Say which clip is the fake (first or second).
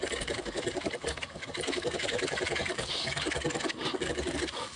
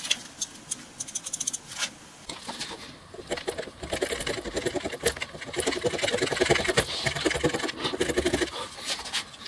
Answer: first